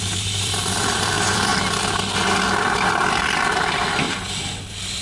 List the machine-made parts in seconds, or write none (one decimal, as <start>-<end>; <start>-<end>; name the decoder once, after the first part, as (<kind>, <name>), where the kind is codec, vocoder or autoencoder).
0.0-1.5 (vocoder, BigVGAN v2); 2.3-5.0